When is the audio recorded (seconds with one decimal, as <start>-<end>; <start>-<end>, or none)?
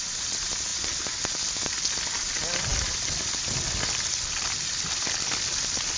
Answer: 0.0-6.0